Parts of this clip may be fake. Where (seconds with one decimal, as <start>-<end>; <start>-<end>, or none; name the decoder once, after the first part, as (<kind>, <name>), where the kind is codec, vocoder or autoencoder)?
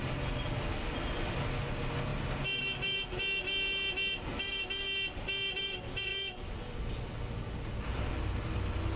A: none